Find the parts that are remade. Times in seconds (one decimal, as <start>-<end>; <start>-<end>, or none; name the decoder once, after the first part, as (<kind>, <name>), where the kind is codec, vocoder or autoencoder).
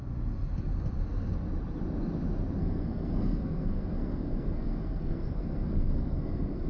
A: 2.6-6.7 (codec, SNAC)